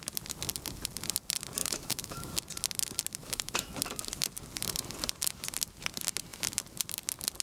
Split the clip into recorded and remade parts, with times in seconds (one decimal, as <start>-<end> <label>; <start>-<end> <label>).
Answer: 0.0-1.6 recorded; 1.6-2.3 remade; 2.3-3.2 recorded; 3.2-3.7 remade; 3.7-7.4 recorded

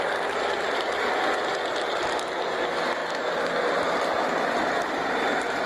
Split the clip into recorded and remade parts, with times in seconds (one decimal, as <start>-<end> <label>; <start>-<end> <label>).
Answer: 0.0-5.7 recorded